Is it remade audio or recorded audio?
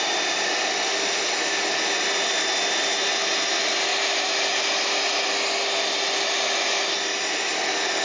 recorded